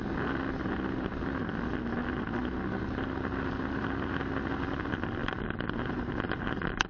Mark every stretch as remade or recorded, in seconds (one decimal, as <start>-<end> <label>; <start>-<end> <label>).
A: 0.0-6.9 recorded